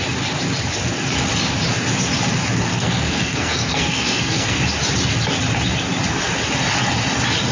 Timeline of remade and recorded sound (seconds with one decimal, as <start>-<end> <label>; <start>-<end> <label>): 0.0-2.7 recorded; 2.7-4.6 remade; 4.6-7.5 recorded